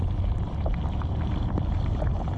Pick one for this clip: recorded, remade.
remade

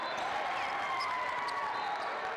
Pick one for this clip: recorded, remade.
remade